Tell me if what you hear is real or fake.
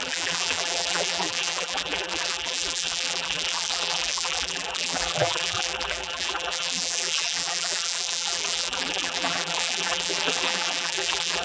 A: fake